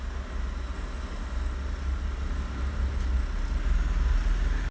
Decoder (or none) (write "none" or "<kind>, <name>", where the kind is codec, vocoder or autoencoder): none